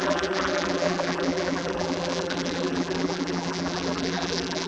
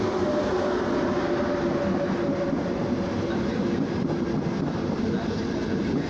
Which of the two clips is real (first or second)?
second